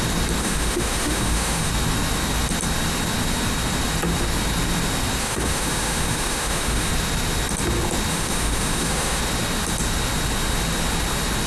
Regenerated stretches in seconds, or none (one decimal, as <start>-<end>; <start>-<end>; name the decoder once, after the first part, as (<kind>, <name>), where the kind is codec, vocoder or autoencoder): 0.4-1.7 (autoencoder, DAC-VAE); 5.2-6.9; 8.1-9.2